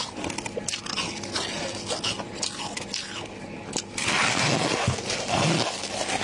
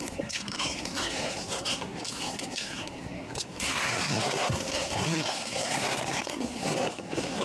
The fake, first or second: second